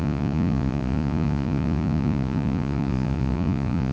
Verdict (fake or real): fake